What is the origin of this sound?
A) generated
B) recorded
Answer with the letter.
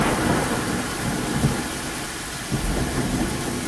B